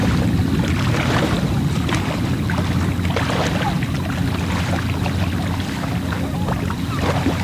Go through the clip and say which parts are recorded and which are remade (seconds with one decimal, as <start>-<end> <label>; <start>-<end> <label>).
0.0-7.4 recorded